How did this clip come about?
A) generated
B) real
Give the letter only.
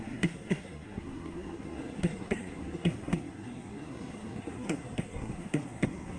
A